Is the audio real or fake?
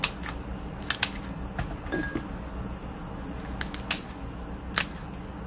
real